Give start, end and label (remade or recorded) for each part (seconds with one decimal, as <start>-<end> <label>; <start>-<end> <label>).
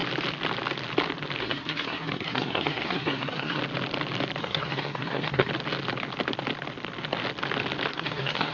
0.0-1.4 recorded; 1.4-3.6 remade; 3.6-4.4 recorded; 4.4-5.5 remade; 5.5-7.9 recorded; 7.9-8.5 remade